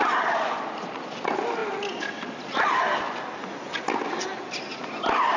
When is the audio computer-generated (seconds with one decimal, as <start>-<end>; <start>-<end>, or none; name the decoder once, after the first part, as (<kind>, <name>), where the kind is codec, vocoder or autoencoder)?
none